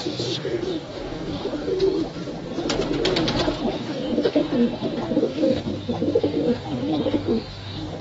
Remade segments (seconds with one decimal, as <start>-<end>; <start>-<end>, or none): 0.0-1.7; 3.8-4.4; 5.2-5.7; 6.2-8.0